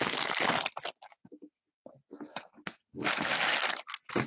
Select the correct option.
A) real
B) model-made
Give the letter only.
A